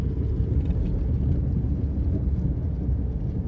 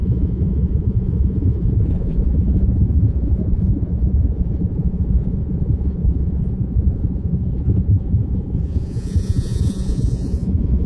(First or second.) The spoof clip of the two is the second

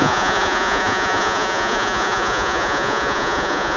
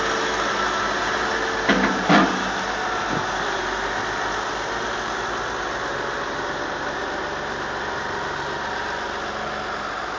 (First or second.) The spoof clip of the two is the first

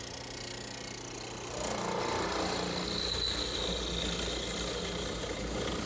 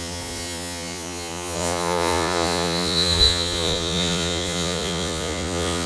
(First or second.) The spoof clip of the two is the second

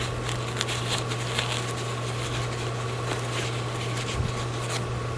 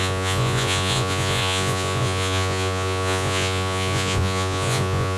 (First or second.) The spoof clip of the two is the second